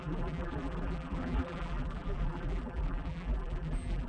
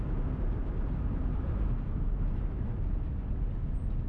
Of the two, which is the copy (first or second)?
first